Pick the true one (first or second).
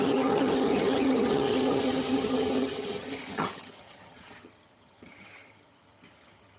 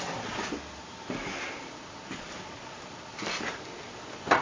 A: second